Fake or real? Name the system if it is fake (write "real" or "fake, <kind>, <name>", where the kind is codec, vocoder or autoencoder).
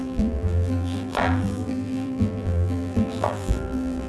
fake, vocoder, BigVGAN v2